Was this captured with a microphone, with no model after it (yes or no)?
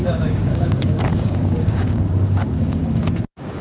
no